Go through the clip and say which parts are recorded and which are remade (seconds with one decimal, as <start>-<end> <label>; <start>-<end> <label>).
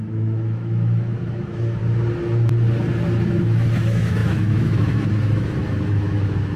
0.0-1.8 remade; 1.8-3.3 recorded; 3.3-6.6 remade